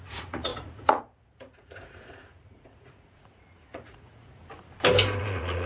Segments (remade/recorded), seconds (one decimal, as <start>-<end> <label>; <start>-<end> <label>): 0.0-4.4 remade; 4.4-5.2 recorded; 5.2-5.7 remade